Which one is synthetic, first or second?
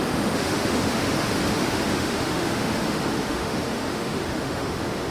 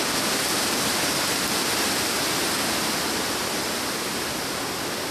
first